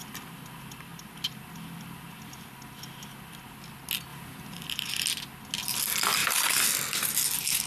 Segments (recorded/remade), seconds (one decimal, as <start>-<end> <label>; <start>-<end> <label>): 0.0-4.1 recorded; 4.1-4.7 remade; 4.7-7.7 recorded